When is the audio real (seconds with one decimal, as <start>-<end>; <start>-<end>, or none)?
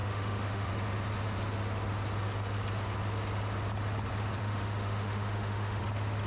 0.7-4.4; 5.8-6.3